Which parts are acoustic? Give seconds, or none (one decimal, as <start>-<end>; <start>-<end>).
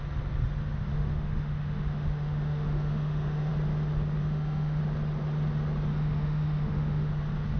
0.0-0.9; 3.5-4.2; 4.8-5.9; 7.1-7.6